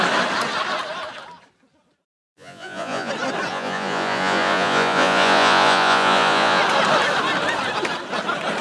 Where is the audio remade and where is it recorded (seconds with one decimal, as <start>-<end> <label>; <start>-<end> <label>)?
0.0-2.3 recorded; 2.3-3.1 remade; 3.1-3.5 recorded; 3.5-6.6 remade; 6.6-8.6 recorded

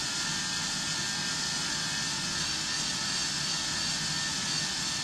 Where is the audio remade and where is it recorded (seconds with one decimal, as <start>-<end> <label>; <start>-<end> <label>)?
0.0-5.0 recorded

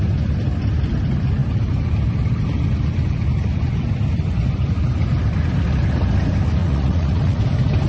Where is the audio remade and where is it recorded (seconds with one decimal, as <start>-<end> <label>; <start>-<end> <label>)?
0.0-6.6 recorded; 6.6-7.4 remade; 7.4-7.9 recorded

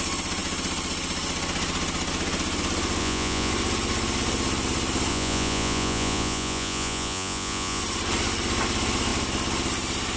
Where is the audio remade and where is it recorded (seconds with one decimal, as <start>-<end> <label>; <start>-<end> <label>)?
0.0-3.0 recorded; 3.0-3.5 remade; 3.5-5.1 recorded; 5.1-7.8 remade; 7.8-10.2 recorded